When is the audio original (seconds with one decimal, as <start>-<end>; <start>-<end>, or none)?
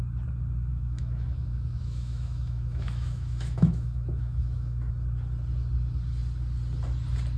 0.0-0.7; 4.9-7.4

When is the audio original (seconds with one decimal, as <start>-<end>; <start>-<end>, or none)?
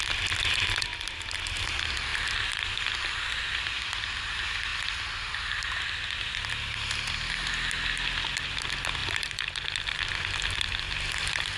0.0-11.6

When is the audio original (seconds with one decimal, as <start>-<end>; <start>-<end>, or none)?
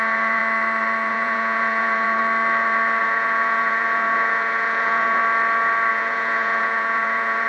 0.4-1.1; 2.2-3.0; 5.2-5.9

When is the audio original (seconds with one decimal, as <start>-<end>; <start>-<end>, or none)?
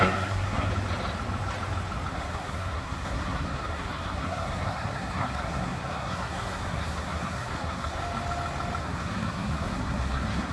0.7-2.1; 8.0-8.8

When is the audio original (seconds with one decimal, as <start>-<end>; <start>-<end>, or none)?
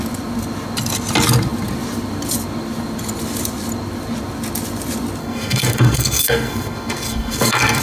0.0-5.2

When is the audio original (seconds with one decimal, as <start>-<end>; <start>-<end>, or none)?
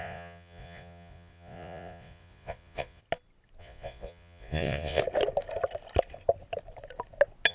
3.0-3.6; 5.0-7.5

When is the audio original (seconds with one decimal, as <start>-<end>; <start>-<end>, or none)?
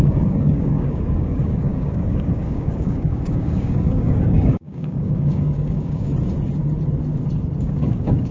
6.1-7.6